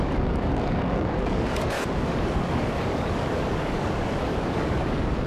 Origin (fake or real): fake